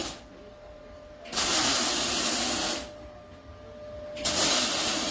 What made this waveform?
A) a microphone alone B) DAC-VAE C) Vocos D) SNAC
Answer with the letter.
A